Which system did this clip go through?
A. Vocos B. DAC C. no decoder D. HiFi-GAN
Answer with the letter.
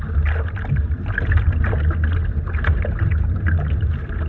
C